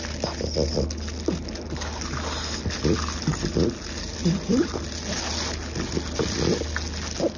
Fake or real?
real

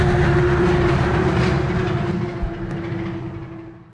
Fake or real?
real